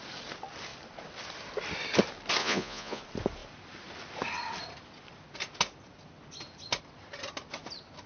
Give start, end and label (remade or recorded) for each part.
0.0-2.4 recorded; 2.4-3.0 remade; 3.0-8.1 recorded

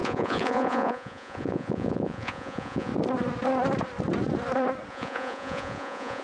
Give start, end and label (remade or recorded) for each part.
0.0-2.9 remade; 2.9-4.9 recorded; 4.9-6.2 remade

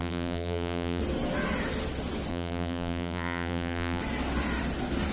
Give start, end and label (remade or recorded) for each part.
0.0-1.0 remade; 1.0-2.3 recorded; 2.3-4.0 remade; 4.0-5.1 recorded

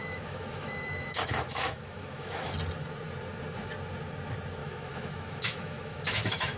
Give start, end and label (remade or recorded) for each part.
0.0-2.5 remade; 2.5-4.6 recorded; 4.6-6.6 remade

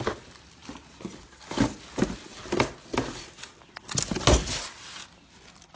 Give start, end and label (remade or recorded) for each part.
0.0-5.8 recorded

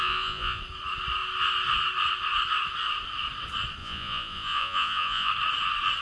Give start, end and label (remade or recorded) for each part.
0.0-0.6 remade; 0.6-3.8 recorded; 3.8-5.3 remade; 5.3-6.0 recorded

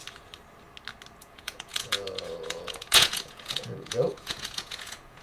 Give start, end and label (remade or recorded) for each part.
0.0-1.2 recorded; 1.2-5.2 remade